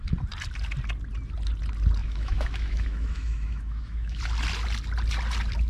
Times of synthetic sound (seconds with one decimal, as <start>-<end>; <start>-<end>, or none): 2.0-4.2